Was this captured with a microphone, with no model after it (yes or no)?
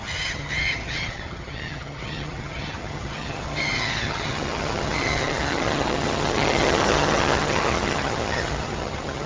no